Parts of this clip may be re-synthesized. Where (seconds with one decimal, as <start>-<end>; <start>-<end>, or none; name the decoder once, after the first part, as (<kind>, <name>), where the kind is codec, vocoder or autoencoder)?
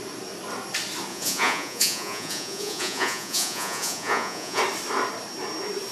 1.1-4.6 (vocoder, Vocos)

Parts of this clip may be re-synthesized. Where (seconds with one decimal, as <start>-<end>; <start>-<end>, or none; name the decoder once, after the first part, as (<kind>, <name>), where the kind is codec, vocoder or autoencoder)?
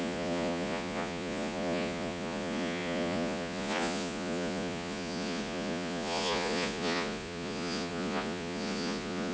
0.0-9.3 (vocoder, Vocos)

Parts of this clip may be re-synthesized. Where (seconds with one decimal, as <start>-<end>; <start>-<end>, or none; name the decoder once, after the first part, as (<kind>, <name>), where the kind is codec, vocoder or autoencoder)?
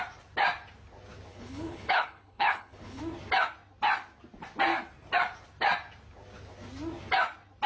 1.3-3.0 (codec, HILCodec)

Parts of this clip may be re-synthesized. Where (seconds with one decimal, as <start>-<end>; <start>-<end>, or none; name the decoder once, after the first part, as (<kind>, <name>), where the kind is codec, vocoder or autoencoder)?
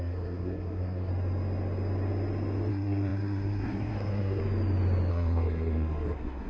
0.0-1.1 (codec, SNAC); 2.7-4.4; 5.1-6.5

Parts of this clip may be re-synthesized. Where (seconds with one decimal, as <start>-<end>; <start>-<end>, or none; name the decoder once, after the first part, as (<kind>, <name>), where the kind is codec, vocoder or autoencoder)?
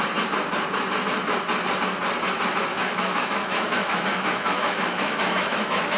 2.7-6.0 (autoencoder, DAC-VAE)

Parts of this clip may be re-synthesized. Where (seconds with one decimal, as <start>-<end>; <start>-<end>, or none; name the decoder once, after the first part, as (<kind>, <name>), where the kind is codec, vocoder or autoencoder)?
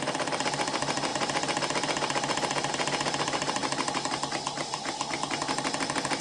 none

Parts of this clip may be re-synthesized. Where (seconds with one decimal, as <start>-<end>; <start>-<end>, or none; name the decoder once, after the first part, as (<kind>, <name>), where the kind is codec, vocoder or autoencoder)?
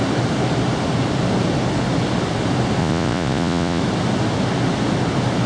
2.8-3.8 (vocoder, Vocos)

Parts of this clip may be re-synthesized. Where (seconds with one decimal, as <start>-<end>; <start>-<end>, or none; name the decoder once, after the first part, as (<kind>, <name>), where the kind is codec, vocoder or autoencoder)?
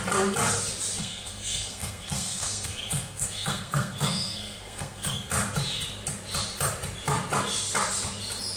1.0-5.3 (codec, SNAC)